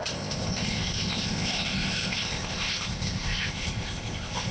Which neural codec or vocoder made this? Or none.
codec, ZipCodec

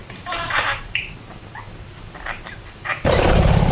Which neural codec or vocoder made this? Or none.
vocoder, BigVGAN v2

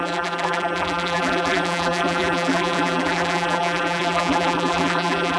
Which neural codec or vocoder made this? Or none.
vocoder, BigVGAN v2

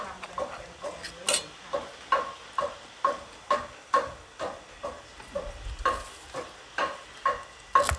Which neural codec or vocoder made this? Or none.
none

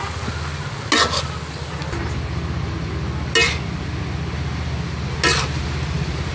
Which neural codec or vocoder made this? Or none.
none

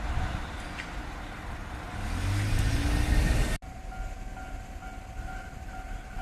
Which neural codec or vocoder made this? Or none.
none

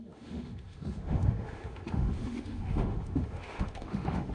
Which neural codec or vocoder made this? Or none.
autoencoder, DAC-VAE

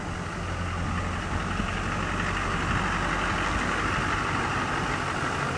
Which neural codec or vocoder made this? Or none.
none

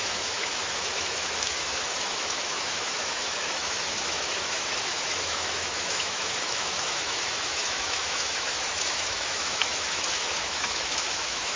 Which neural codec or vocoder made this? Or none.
autoencoder, DAC-VAE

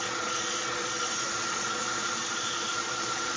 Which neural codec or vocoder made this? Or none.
vocoder, Vocos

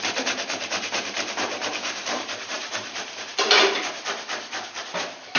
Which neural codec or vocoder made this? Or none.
vocoder, BigVGAN v2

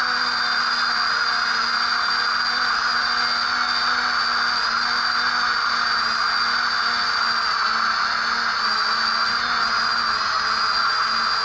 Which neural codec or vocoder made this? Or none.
none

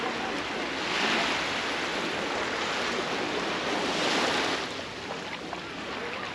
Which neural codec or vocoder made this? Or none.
none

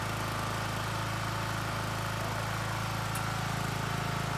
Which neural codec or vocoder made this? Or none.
none